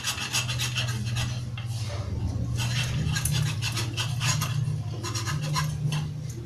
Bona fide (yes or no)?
yes